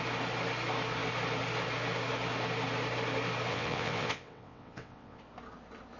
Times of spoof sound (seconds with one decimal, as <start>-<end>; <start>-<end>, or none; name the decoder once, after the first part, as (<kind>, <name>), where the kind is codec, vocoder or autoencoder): 3.5-5.2 (vocoder, WaveNeXt)

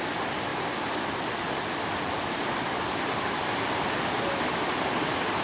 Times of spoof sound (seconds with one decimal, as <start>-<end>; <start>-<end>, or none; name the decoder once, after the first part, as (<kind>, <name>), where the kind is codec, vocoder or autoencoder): none

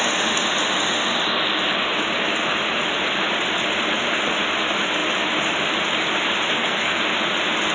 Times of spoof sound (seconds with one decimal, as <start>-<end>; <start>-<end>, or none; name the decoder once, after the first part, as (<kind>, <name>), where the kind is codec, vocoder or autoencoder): 6.5-7.0 (codec, SNAC)

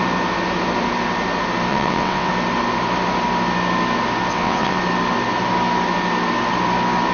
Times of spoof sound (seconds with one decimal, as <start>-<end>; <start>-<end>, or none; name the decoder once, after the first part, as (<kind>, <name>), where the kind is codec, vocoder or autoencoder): 1.7-2.3 (vocoder, WaveNeXt); 4.3-4.8

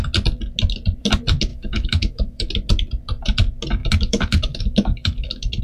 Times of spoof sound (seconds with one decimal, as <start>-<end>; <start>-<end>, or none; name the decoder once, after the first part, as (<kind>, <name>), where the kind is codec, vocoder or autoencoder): 1.5-2.5 (autoencoder, DAC-VAE); 3.8-5.6

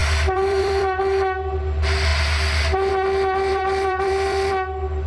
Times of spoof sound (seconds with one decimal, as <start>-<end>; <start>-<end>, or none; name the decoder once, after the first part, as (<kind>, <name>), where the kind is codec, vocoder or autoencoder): 0.0-1.0 (vocoder, BigVGAN v2); 3.5-4.5